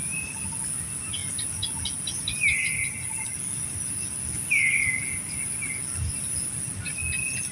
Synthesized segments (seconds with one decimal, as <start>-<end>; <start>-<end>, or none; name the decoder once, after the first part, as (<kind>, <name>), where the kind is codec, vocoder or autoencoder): none